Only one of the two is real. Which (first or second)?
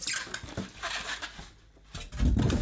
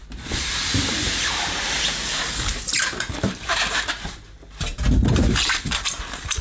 first